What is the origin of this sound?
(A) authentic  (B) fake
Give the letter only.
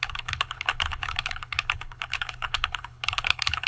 B